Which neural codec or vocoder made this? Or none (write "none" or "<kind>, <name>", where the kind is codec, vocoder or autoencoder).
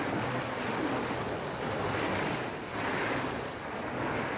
none